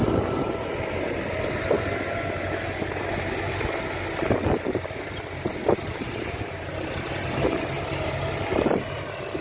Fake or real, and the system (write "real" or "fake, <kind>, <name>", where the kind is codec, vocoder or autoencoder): real